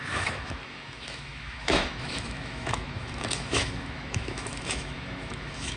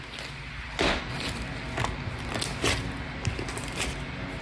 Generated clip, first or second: first